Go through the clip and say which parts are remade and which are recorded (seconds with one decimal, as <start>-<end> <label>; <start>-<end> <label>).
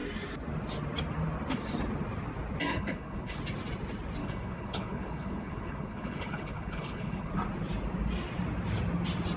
0.0-2.7 recorded; 2.7-3.4 remade; 3.4-4.2 recorded; 4.2-7.3 remade; 7.3-9.4 recorded